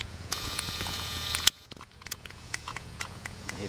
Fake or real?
fake